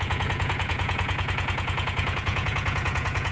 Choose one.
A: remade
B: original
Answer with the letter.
A